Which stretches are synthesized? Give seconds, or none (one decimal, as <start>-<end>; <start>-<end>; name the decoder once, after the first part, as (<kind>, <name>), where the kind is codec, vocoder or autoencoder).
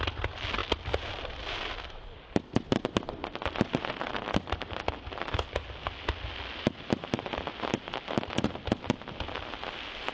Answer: none